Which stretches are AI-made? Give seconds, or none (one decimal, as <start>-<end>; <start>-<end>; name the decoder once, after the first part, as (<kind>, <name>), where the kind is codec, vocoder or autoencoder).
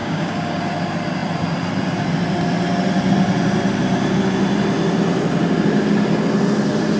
0.0-0.6 (codec, DAC)